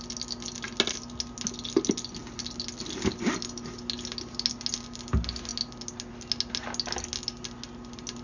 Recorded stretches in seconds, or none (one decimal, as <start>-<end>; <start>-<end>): 0.0-8.2